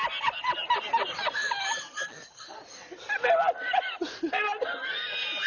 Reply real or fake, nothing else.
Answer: real